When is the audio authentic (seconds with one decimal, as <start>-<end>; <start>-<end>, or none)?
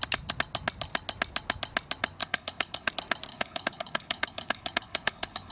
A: 0.0-2.2; 2.9-3.3